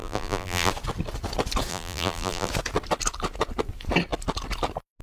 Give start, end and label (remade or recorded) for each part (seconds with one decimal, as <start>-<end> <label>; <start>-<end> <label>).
0.0-0.7 remade; 0.7-1.7 recorded; 1.7-2.5 remade; 2.5-5.0 recorded